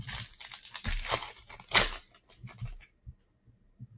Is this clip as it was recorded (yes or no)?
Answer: yes